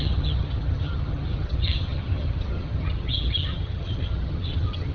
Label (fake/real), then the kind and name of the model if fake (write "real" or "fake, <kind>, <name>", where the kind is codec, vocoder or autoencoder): fake, vocoder, HiFi-GAN